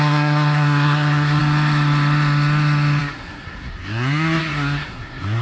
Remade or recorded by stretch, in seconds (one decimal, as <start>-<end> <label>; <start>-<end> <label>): 0.0-1.4 remade; 1.4-3.0 recorded; 3.0-5.4 remade